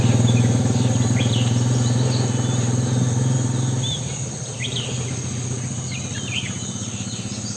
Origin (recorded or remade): recorded